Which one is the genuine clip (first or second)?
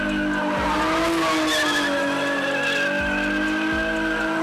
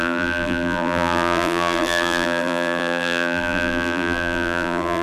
first